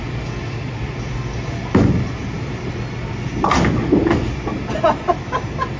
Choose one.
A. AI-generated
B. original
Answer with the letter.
B